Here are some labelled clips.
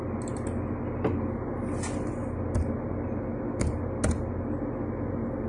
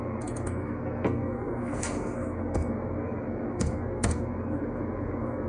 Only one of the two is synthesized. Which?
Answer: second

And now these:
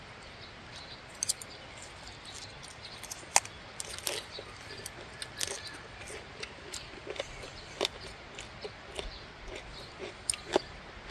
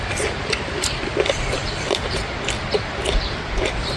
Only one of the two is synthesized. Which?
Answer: second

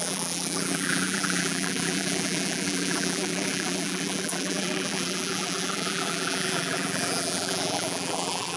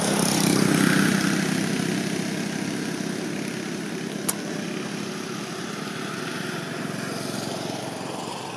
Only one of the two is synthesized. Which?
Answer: first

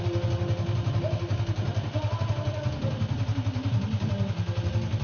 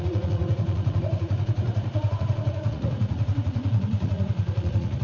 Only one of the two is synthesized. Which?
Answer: second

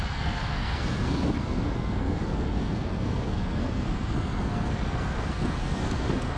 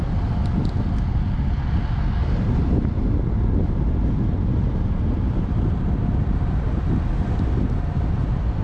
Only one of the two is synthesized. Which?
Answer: first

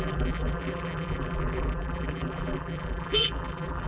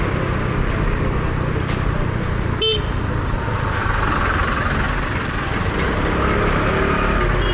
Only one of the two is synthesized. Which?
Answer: first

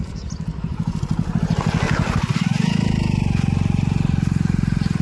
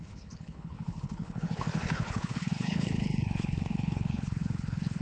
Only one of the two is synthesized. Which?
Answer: second